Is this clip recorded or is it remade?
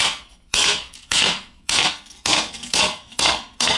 remade